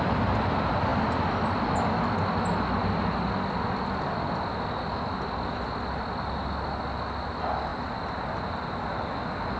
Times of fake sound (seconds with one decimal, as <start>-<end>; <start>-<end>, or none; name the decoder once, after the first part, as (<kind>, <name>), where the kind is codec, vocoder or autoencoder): none